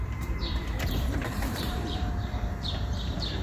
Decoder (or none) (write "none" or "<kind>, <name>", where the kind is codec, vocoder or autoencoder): vocoder, BigVGAN v2